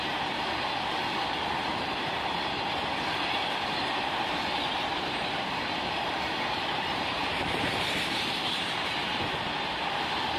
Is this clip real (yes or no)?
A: no